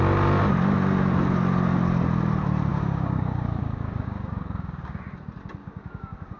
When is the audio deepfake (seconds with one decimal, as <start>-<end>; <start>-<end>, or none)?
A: 2.7-5.0; 5.6-6.4

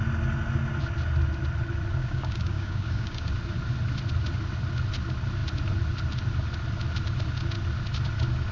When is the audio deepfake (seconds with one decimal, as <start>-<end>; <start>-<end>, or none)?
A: 2.0-3.3

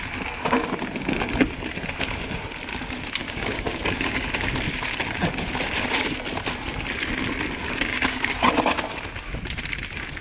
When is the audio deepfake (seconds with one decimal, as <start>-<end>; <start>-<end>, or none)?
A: 3.2-4.3; 7.6-8.5

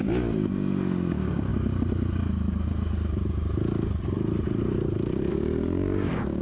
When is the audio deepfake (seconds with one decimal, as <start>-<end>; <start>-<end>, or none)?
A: 0.0-1.5; 5.3-6.4

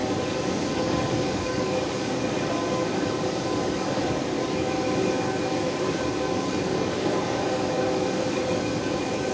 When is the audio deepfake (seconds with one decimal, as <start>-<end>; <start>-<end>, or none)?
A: 0.0-9.3

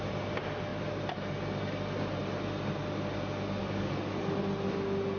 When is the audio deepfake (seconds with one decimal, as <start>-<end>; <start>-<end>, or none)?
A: 3.6-4.4

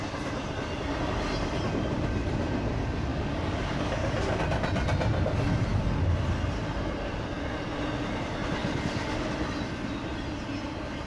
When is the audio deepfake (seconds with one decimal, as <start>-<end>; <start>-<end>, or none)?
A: 3.1-4.4; 8.6-9.3